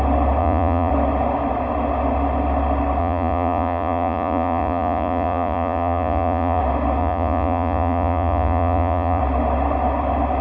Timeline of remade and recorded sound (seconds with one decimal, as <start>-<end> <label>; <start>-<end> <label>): 0.0-0.4 recorded; 0.4-0.9 remade; 0.9-3.0 recorded; 3.0-6.6 remade; 6.6-7.0 recorded; 7.0-9.2 remade; 9.2-10.4 recorded